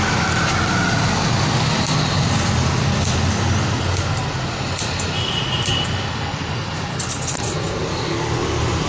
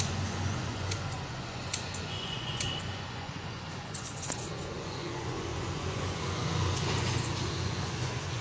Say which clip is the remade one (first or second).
second